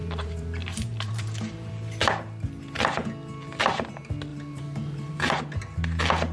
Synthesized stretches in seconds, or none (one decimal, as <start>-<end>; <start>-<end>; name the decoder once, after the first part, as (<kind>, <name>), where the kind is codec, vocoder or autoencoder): 0.0-1.7 (vocoder, BigVGAN v2); 4.3-5.4